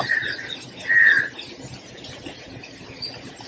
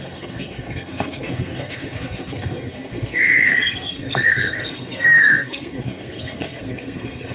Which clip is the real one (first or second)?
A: first